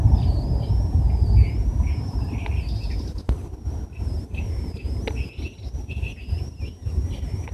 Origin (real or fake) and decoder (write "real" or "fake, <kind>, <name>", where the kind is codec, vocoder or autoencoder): real